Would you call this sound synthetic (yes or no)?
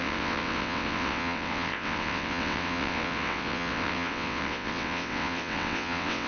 yes